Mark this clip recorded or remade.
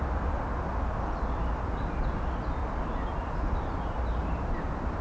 recorded